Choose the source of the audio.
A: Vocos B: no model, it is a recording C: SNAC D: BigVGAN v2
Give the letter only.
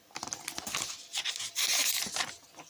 B